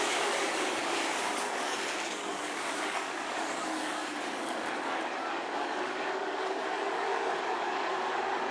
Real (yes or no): no